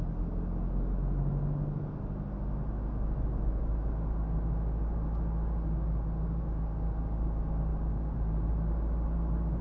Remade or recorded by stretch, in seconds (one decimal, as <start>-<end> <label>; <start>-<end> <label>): 0.0-7.7 recorded; 7.7-8.5 remade; 8.5-9.6 recorded